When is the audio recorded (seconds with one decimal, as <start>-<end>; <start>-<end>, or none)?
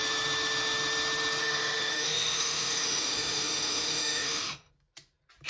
0.0-1.4; 4.7-5.5